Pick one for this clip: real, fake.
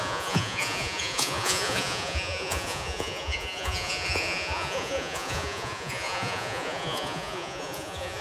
fake